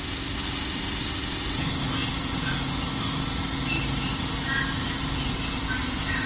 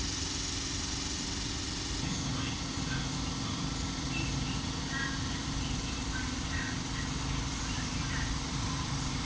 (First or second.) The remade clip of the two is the second